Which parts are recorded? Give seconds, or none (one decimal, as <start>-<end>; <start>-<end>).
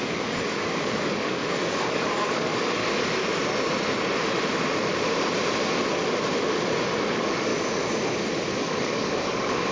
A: 2.8-7.0; 7.5-8.5